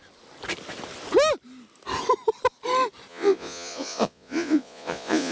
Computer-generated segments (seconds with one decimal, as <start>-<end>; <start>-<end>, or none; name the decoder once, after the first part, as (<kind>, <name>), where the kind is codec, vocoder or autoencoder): 3.1-5.3 (vocoder, Vocos)

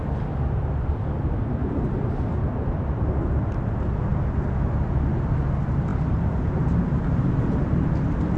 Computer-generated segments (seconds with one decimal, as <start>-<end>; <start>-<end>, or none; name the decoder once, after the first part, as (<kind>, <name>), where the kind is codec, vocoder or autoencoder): none

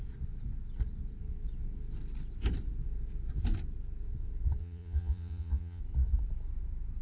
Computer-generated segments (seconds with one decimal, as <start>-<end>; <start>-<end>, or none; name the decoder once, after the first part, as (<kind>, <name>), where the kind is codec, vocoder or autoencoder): 4.6-5.8 (vocoder, Vocos)

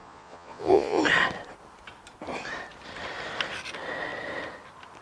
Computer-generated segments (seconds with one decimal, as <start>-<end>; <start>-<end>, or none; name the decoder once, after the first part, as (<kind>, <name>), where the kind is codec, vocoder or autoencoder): 0.0-1.0 (vocoder, Vocos)

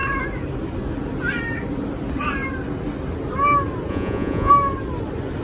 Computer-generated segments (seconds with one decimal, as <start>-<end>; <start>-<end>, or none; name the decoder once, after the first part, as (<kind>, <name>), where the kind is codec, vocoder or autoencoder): 3.9-4.5 (vocoder, Vocos)

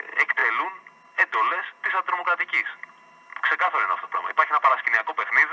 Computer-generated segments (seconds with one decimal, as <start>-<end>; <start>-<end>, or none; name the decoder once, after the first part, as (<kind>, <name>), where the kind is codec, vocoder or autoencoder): none

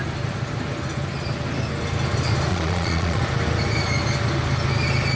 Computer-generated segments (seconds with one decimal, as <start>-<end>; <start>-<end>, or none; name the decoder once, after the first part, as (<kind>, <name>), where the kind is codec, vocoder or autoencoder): 2.5-3.2 (vocoder, Vocos)

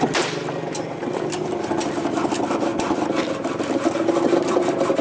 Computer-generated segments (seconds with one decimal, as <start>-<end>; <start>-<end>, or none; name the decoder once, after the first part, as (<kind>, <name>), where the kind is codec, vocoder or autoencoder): none